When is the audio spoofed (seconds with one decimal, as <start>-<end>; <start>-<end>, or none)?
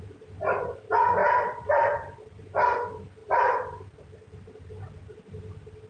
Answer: 1.2-2.4